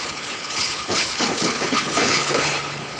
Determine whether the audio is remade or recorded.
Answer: remade